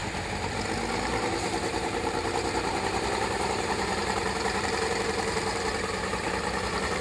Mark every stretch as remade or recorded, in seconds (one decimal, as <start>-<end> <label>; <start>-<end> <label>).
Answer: 0.0-0.9 recorded; 0.9-7.0 remade